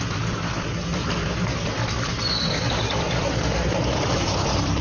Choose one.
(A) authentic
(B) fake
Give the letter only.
A